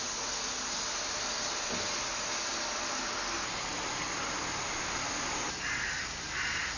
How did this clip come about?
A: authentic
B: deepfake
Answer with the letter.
A